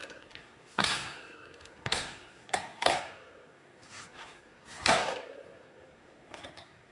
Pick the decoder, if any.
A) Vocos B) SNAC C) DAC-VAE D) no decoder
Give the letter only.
B